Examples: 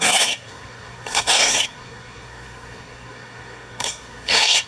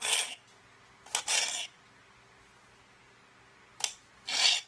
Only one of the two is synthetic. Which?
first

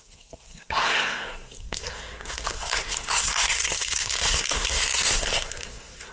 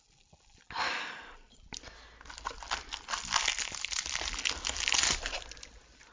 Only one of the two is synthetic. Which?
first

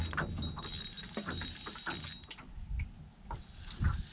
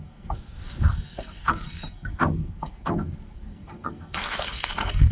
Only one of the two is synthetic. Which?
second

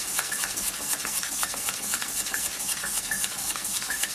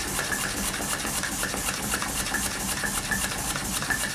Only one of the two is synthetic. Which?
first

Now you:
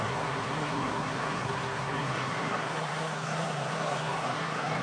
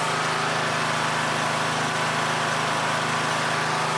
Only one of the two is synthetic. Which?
first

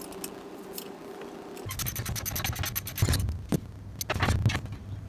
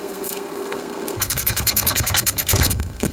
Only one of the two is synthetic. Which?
second